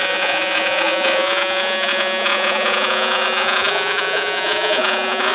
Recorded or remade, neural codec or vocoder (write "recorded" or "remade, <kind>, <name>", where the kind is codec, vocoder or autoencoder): remade, vocoder, Vocos